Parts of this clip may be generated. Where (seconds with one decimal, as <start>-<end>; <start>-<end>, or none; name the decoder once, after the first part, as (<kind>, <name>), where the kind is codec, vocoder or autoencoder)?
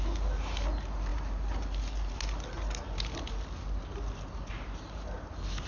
none